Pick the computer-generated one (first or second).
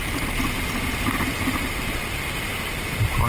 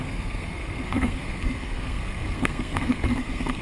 second